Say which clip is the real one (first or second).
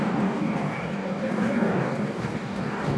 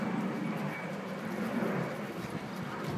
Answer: second